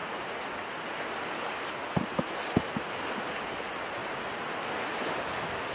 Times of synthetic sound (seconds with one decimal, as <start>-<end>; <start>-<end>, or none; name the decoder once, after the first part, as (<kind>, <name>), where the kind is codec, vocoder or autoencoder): 0.0-3.3 (vocoder, BigVGAN v2); 4.0-4.7